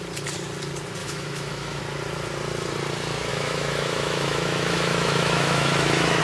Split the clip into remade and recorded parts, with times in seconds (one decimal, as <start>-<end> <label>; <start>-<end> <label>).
0.0-1.0 recorded; 1.0-1.8 remade; 1.8-3.3 recorded; 3.3-6.2 remade